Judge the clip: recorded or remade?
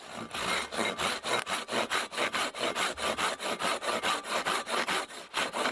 recorded